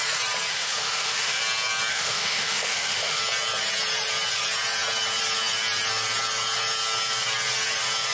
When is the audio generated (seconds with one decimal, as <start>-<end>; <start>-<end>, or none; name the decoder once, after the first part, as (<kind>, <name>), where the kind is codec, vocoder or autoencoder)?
0.5-1.4 (autoencoder, DAC-VAE); 1.9-3.2